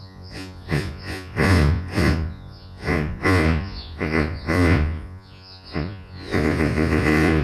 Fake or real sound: fake